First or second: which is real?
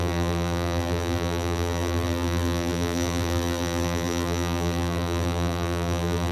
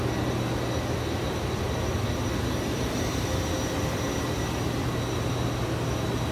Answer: second